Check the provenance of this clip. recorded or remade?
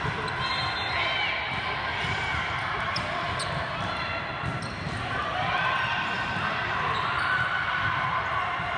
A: recorded